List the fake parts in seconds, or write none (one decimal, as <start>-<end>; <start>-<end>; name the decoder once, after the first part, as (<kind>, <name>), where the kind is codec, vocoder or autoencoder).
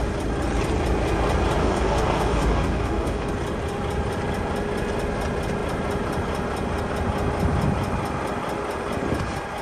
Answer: 1.6-3.3 (codec, DAC)